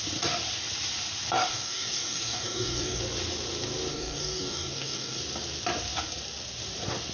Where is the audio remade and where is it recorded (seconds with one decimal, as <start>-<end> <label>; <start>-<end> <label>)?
0.0-1.5 recorded; 1.5-3.0 remade; 3.0-3.9 recorded; 3.9-5.2 remade; 5.2-7.1 recorded